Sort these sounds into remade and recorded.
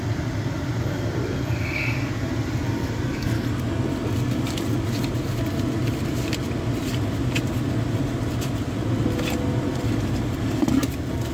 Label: recorded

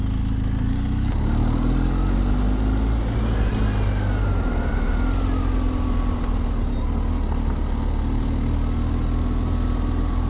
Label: recorded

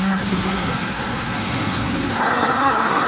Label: remade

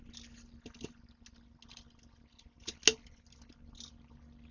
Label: recorded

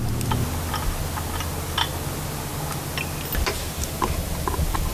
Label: recorded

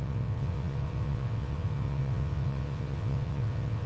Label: remade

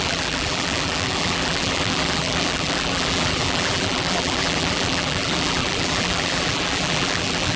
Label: remade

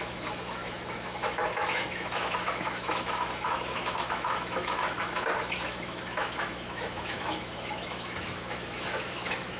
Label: remade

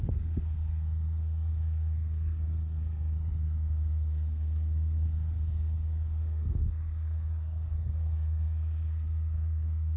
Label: remade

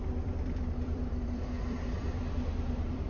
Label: remade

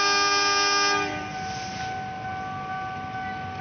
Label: recorded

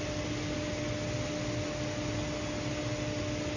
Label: recorded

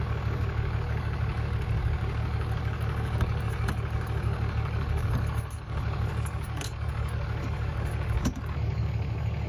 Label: remade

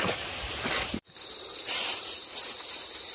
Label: recorded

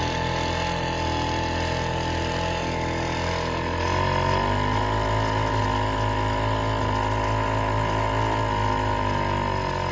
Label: recorded